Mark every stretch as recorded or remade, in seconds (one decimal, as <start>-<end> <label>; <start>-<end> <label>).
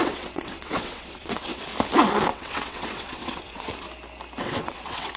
0.0-1.7 remade; 1.7-2.3 recorded; 2.3-3.7 remade; 3.7-4.4 recorded; 4.4-5.2 remade